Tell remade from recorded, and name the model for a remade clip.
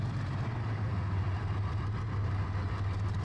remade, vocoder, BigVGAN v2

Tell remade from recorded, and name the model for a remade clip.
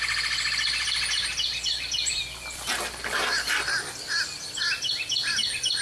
recorded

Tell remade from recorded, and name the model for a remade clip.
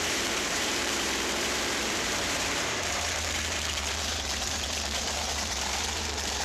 remade, vocoder, BigVGAN v2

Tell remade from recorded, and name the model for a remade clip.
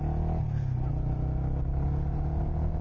recorded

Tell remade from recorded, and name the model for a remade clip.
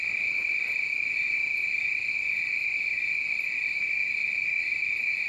recorded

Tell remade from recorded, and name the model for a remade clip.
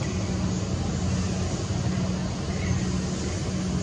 recorded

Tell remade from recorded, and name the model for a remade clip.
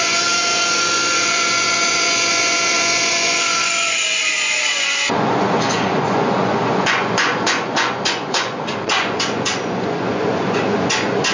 remade, vocoder, Vocos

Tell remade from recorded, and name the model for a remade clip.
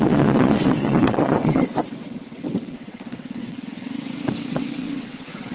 remade, vocoder, WaveNeXt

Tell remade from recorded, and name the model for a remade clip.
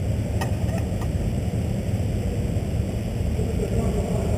remade, vocoder, BigVGAN v2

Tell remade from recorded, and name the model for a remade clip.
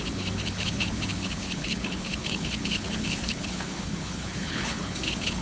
remade, codec, HILCodec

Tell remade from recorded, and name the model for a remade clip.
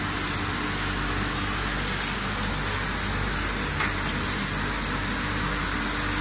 recorded